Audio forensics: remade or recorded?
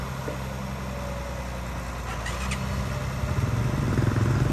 recorded